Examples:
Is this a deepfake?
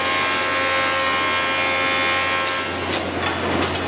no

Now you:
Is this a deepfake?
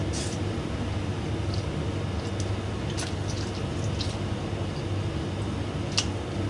no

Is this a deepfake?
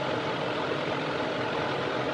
no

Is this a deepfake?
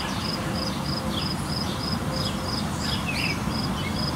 no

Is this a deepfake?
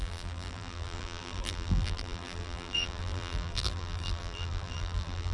yes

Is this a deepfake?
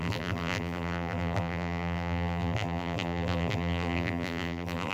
yes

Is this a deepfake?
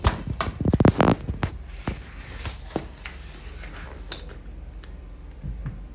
no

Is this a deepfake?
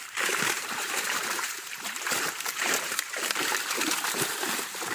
yes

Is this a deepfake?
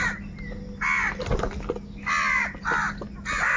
no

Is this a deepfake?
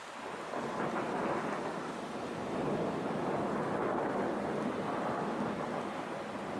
no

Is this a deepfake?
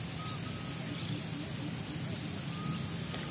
no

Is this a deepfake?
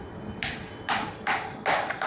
no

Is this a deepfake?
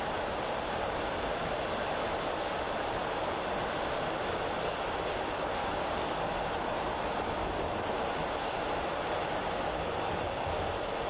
yes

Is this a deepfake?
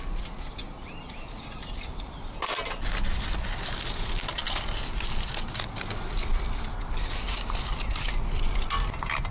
no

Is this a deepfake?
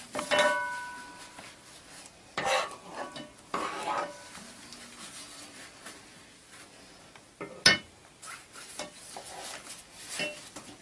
no